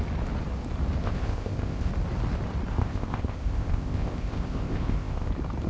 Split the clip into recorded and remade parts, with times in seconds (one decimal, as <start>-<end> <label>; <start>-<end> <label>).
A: 0.0-1.0 recorded; 1.0-1.9 remade; 1.9-2.7 recorded; 2.7-5.3 remade; 5.3-5.7 recorded